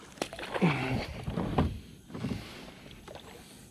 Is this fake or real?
real